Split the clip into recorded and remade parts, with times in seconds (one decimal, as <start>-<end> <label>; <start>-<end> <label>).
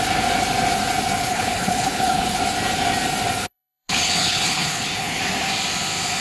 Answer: 0.0-1.2 recorded; 1.2-2.4 remade; 2.4-3.4 recorded; 3.4-5.2 remade; 5.2-6.2 recorded